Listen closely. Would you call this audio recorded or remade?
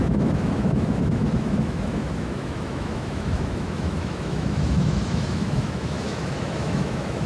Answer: remade